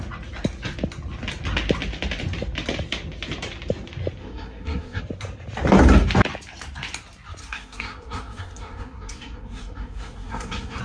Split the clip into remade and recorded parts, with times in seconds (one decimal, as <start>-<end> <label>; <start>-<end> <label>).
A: 0.0-4.2 recorded; 4.2-5.0 remade; 5.0-7.4 recorded; 7.4-10.8 remade